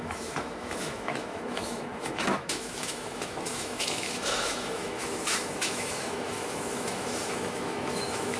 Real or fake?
fake